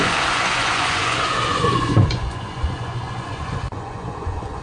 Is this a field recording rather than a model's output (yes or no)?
no